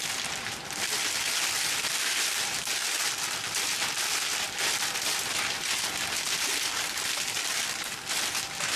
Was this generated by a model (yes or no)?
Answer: no